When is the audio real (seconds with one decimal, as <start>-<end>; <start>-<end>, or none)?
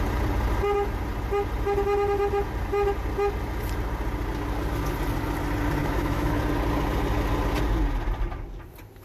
0.0-5.8; 6.4-9.0